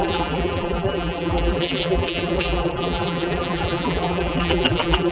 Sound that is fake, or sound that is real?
fake